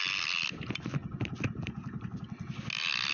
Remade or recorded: recorded